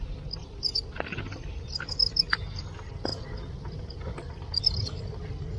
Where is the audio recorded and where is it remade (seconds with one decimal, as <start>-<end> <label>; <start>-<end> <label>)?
0.0-5.6 recorded